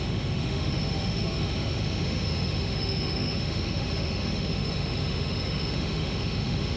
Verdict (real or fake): fake